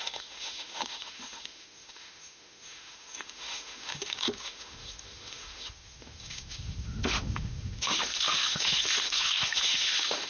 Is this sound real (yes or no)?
no